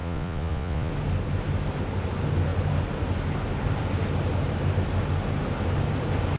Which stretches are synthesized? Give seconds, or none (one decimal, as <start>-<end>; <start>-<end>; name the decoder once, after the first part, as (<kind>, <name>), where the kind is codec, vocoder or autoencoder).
0.0-0.9 (vocoder, Vocos)